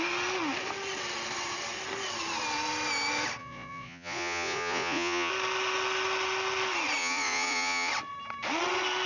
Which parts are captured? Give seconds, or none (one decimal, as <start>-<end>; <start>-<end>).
0.0-3.4; 5.3-7.0; 7.9-9.1